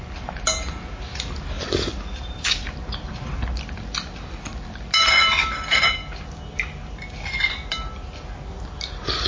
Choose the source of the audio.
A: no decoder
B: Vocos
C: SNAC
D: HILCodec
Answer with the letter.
A